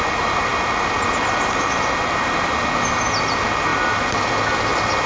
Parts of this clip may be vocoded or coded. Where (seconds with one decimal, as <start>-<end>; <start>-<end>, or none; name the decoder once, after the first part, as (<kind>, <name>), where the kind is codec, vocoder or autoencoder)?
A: none